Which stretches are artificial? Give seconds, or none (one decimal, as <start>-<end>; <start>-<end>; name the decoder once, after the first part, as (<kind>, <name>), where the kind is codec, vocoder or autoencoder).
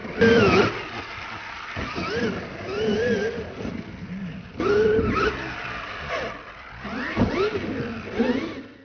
none